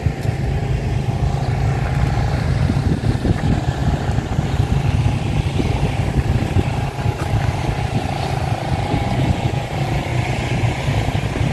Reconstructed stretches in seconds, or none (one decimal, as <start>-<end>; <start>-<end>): 8.9-9.7; 10.1-10.8